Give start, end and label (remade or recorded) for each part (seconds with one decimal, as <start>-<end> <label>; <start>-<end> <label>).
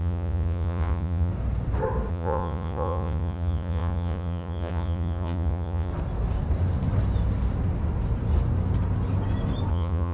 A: 0.0-1.3 remade; 1.3-2.1 recorded; 2.1-5.9 remade; 5.9-9.7 recorded; 9.7-10.1 remade